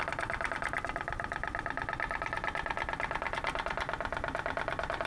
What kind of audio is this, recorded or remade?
recorded